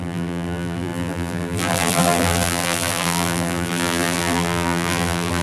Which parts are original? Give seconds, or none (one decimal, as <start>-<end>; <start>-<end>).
none